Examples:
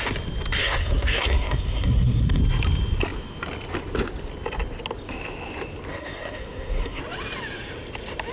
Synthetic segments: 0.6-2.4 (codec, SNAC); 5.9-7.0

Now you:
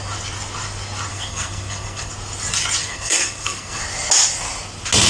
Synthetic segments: 1.1-2.1 (codec, SNAC); 2.8-3.8

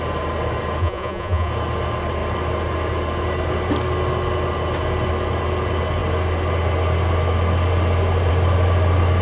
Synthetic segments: 0.8-1.5 (vocoder, Vocos)

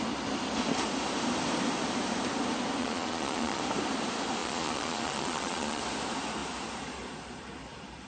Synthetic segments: 2.8-3.6 (vocoder, Vocos); 4.4-5.8

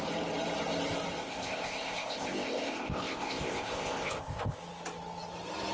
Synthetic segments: 1.2-4.6 (codec, ZipCodec)